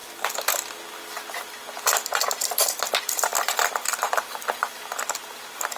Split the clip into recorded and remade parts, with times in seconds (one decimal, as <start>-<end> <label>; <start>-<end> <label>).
0.0-5.8 recorded